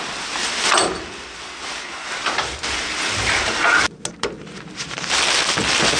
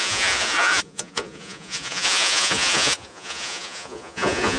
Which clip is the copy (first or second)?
second